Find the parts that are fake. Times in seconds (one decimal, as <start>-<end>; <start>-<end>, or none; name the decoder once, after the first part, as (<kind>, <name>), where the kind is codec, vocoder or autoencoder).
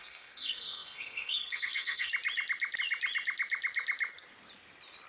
0.0-2.1 (codec, SNAC)